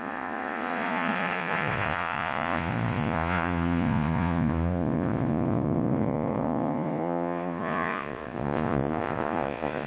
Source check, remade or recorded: remade